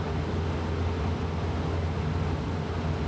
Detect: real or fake real